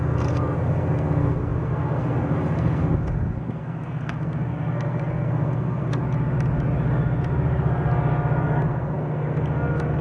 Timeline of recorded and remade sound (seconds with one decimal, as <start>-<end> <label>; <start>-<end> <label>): 0.0-6.0 remade; 6.0-8.4 recorded; 8.4-10.0 remade